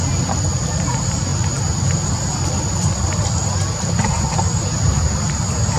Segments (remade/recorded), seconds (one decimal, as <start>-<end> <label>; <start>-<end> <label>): 0.0-5.8 recorded